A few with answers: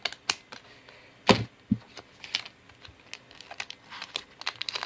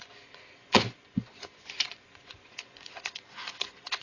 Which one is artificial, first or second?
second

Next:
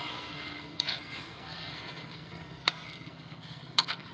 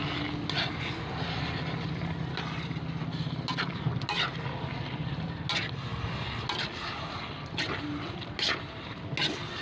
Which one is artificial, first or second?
first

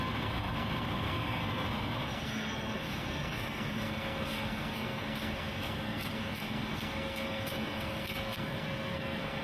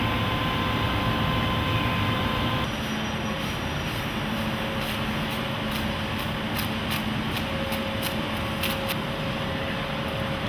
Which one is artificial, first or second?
first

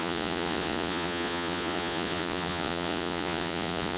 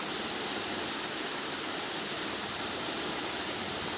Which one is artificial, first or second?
first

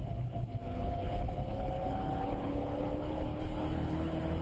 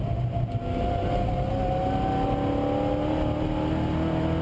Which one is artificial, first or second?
first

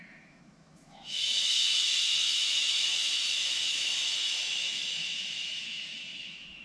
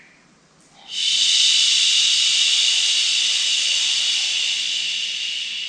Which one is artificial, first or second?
first